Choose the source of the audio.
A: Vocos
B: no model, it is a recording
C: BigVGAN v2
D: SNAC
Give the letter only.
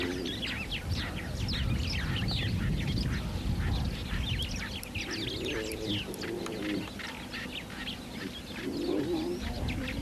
B